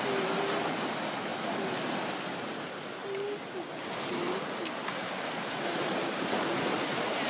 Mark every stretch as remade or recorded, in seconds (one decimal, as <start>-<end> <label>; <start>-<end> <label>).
0.0-7.3 recorded